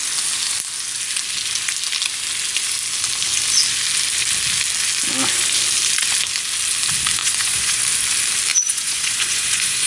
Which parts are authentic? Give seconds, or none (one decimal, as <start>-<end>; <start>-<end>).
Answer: 0.0-7.2; 7.8-8.5